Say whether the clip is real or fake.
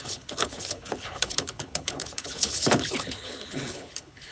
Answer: fake